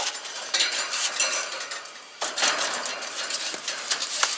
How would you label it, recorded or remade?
remade